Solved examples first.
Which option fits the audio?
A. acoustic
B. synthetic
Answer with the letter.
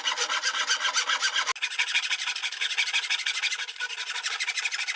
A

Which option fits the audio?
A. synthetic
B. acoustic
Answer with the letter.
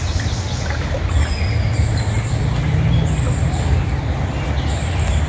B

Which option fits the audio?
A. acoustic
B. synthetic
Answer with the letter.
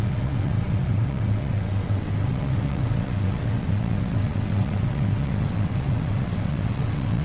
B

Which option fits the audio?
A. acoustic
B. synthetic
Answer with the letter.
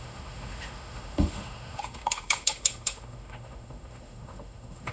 B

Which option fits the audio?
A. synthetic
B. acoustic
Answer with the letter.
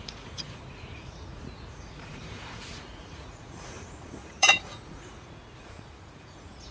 A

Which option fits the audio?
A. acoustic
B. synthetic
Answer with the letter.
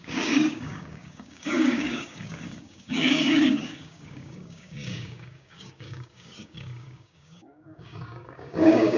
B